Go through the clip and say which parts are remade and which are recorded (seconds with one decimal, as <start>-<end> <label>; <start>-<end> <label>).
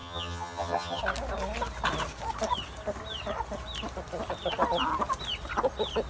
0.0-1.0 remade; 1.0-6.1 recorded